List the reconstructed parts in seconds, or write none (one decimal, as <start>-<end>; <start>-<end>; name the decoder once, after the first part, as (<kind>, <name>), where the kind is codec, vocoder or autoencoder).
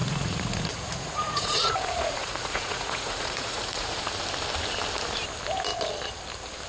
0.0-4.0 (vocoder, Vocos)